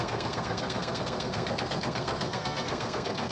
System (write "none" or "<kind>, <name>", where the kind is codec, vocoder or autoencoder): codec, SNAC